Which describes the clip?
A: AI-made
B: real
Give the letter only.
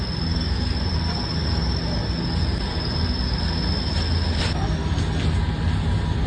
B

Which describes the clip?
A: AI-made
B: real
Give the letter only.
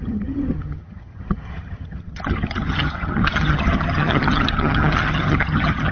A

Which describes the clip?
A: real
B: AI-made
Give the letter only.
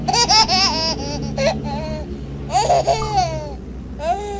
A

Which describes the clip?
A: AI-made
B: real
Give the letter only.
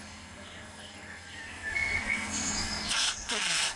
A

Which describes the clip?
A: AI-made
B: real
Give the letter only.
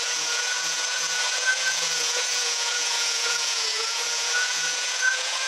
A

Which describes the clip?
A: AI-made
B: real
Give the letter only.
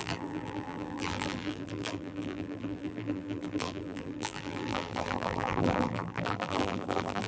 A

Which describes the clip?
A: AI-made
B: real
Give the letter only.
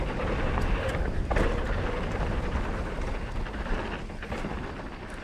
B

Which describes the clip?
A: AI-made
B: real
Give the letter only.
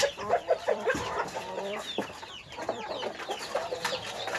A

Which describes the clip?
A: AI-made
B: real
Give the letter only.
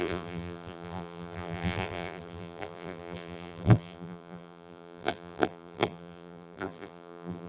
A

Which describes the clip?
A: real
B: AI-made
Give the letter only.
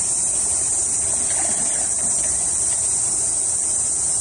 A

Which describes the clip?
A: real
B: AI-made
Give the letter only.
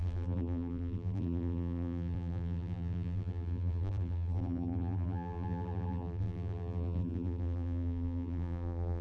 B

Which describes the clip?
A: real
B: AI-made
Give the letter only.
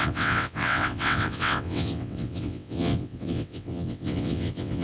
B